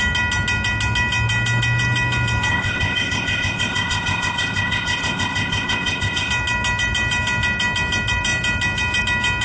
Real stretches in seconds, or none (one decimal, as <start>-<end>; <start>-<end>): 0.0-2.5; 6.3-9.4